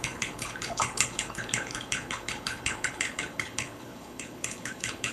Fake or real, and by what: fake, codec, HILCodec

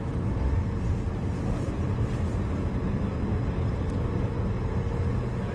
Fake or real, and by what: real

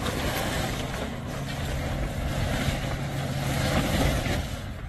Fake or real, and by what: real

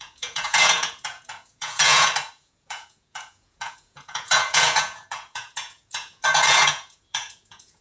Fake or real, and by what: fake, vocoder, Vocos